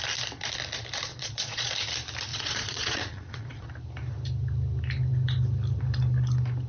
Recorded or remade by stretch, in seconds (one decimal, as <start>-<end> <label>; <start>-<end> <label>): 0.0-1.1 recorded; 1.1-1.7 remade; 1.7-2.3 recorded; 2.3-3.7 remade; 3.7-6.7 recorded